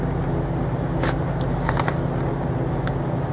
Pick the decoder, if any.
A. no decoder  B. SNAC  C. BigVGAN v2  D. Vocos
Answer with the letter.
A